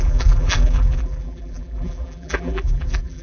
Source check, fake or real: fake